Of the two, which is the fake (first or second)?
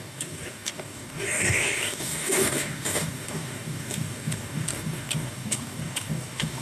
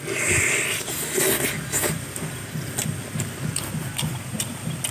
first